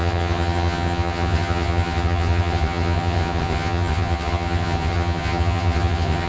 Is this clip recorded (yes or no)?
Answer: no